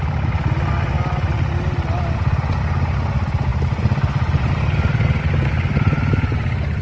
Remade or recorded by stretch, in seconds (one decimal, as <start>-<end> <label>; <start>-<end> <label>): 0.0-6.8 recorded